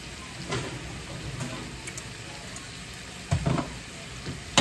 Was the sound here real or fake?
real